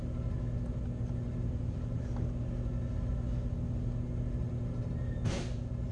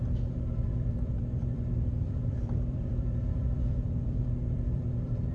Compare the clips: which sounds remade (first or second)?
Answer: second